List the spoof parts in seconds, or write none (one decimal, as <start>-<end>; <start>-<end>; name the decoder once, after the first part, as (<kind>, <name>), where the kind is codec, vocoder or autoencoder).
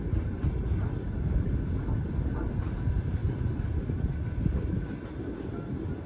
none